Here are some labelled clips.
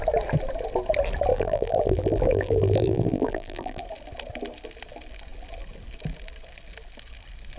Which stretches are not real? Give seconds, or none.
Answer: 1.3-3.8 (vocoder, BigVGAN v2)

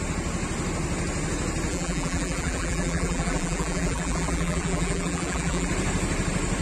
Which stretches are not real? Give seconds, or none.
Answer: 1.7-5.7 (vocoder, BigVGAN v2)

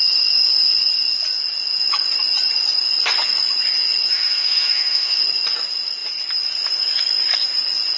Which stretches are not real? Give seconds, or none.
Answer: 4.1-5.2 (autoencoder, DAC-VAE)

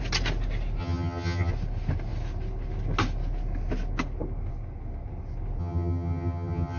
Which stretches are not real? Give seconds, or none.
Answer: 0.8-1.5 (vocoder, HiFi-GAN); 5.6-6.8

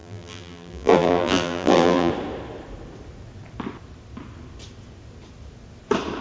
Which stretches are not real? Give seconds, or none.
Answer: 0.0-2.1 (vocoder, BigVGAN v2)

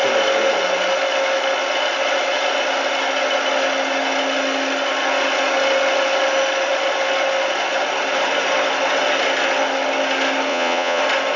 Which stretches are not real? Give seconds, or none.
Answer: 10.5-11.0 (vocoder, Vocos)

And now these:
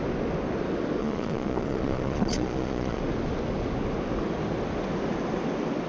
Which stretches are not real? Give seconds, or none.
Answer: 1.0-3.0 (vocoder, Vocos)

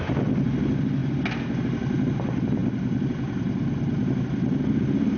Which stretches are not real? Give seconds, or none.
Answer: none